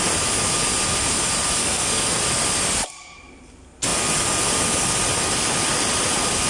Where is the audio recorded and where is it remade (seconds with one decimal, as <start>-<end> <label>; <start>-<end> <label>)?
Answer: 0.0-1.6 recorded; 1.6-2.2 remade; 2.2-6.5 recorded

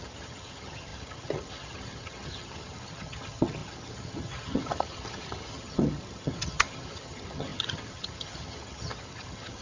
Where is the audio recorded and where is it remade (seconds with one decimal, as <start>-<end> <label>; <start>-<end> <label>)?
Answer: 0.0-9.6 remade

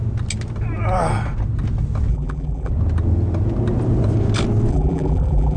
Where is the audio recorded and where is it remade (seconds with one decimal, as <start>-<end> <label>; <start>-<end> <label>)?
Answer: 0.0-2.1 recorded; 2.1-2.7 remade; 2.7-4.7 recorded; 4.7-5.6 remade